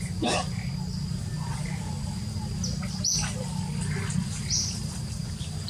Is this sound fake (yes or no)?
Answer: no